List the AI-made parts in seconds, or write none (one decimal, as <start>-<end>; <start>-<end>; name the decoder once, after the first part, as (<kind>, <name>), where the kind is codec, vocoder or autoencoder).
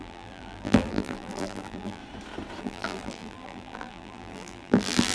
0.0-2.0 (vocoder, BigVGAN v2); 2.6-5.1